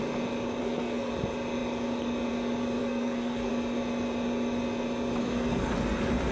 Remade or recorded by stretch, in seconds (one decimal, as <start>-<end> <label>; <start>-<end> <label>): 0.0-0.6 recorded; 0.6-1.1 remade; 1.1-2.8 recorded; 2.8-3.5 remade; 3.5-5.2 recorded; 5.2-5.7 remade; 5.7-6.3 recorded